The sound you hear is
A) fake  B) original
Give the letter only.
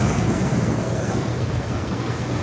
A